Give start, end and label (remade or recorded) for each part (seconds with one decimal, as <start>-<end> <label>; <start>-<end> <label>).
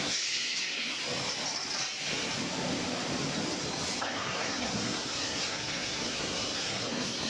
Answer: 0.0-1.0 remade; 1.0-4.0 recorded; 4.0-7.3 remade